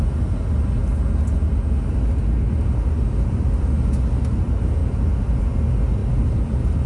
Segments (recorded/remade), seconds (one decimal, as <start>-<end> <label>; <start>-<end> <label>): 0.0-6.9 recorded